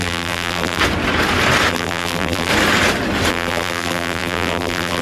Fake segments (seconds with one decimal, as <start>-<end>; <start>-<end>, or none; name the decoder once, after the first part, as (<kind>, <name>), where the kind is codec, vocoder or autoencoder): 0.0-0.8 (vocoder, BigVGAN v2); 1.7-2.5; 3.3-5.0